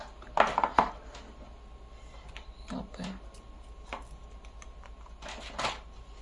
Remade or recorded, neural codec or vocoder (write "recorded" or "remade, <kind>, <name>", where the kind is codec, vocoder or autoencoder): recorded